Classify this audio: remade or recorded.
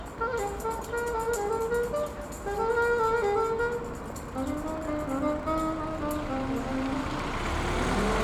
recorded